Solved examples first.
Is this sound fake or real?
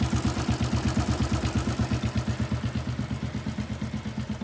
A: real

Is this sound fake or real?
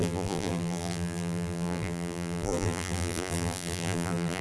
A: fake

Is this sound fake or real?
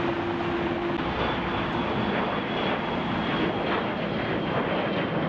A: real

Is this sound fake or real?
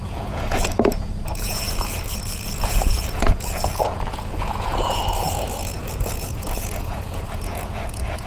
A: fake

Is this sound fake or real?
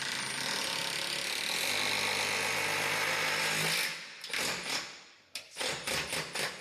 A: real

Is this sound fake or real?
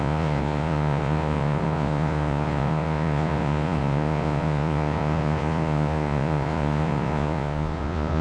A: fake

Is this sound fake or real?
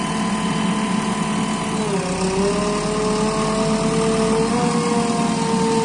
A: real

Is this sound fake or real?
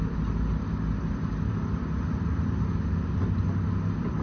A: real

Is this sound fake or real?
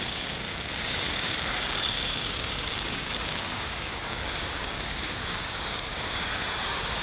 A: fake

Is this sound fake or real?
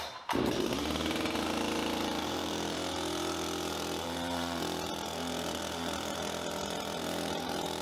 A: fake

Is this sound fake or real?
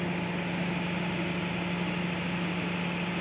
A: real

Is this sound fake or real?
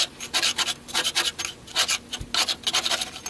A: real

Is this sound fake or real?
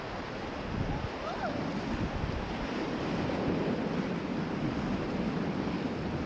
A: real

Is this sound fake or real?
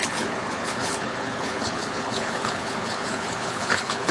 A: fake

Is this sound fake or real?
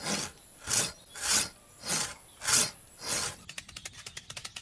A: real